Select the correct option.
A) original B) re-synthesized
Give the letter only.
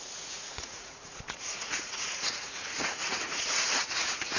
B